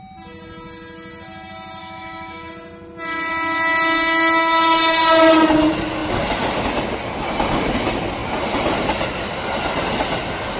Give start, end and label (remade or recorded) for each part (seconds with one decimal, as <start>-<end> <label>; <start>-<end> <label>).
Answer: 0.0-1.8 recorded; 1.8-2.5 remade; 2.5-10.6 recorded